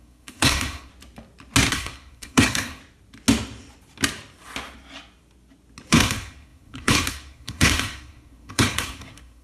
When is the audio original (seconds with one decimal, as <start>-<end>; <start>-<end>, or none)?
0.9-1.7; 2.8-5.9